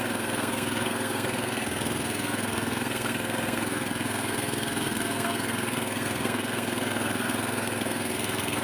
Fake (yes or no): yes